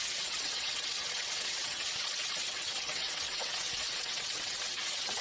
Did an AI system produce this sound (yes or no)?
yes